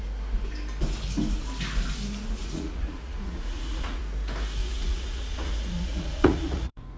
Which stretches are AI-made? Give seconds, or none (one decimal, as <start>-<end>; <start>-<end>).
2.4-4.0; 4.6-7.0